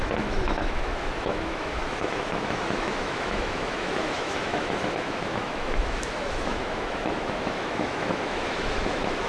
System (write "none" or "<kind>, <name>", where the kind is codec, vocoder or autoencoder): autoencoder, DAC-VAE